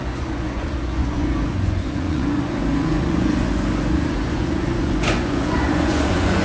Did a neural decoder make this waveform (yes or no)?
yes